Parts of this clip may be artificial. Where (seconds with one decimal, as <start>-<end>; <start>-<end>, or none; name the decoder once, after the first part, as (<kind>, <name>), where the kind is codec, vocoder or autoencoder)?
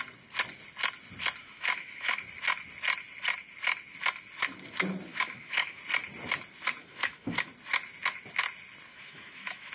1.4-2.2 (autoencoder, DAC-VAE); 5.1-5.8; 6.8-7.5; 8.9-9.7